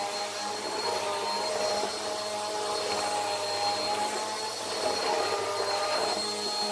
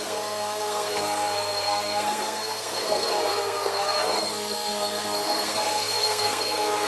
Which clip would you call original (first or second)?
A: first